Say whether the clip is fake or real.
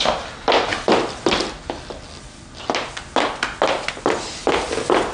real